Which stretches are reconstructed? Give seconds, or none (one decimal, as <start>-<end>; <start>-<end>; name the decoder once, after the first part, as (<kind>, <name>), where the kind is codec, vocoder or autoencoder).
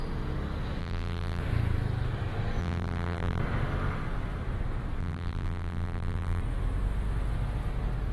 0.8-1.4 (vocoder, BigVGAN v2); 2.6-3.4; 5.0-6.4